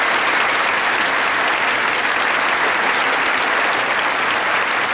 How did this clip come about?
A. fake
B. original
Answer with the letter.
B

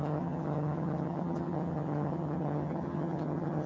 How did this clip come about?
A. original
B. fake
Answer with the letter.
B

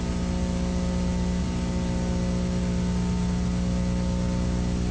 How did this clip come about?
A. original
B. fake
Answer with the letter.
A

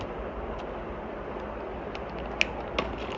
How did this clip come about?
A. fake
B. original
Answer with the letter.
B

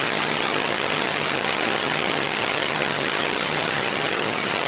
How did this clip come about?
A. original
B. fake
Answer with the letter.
B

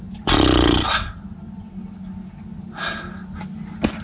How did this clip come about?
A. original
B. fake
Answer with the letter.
A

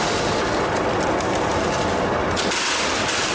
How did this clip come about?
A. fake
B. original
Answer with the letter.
B